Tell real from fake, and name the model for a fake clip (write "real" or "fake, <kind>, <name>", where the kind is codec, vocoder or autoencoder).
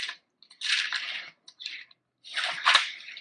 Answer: real